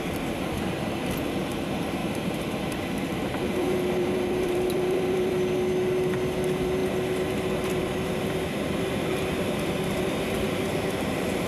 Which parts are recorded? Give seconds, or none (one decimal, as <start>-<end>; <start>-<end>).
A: 0.0-2.0; 5.3-11.5